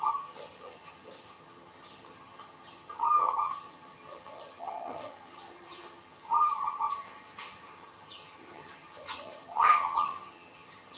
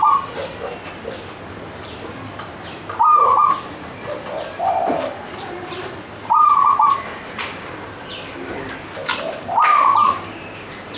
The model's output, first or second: first